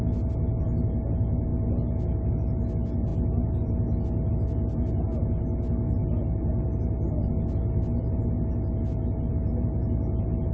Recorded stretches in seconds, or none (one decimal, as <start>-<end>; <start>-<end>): 0.0-10.5